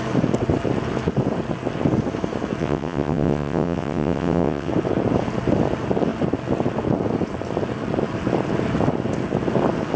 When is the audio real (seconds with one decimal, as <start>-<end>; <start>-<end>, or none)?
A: 0.0-2.6; 4.7-10.0